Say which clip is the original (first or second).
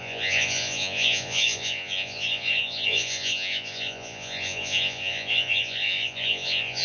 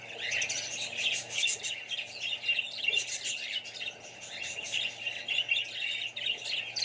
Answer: second